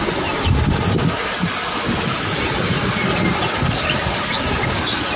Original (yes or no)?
yes